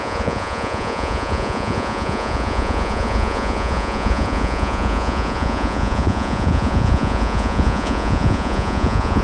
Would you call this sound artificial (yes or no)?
yes